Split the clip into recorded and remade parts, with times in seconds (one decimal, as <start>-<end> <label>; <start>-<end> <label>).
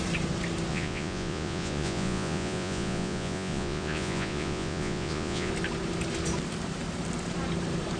0.0-0.7 recorded; 0.7-5.5 remade; 5.5-8.0 recorded